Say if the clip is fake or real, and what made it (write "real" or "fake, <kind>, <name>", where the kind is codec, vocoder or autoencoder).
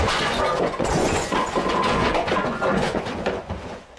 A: fake, vocoder, Vocos